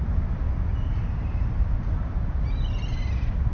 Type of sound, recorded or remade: recorded